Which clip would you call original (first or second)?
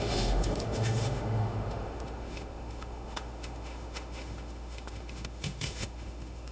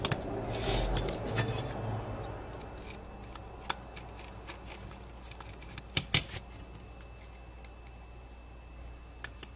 second